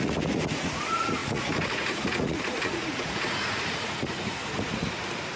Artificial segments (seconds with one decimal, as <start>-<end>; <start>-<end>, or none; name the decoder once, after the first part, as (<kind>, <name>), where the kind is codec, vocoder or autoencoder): 0.0-4.4 (vocoder, Vocos)